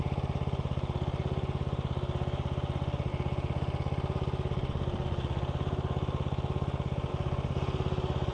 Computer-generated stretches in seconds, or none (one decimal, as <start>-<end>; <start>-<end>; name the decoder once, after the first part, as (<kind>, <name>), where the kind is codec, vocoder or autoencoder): none